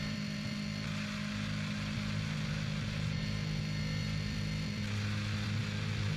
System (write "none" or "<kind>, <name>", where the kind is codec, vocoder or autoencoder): none